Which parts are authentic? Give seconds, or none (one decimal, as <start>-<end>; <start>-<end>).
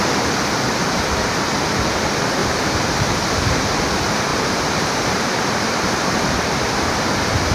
0.0-2.4; 3.8-4.3; 6.5-7.5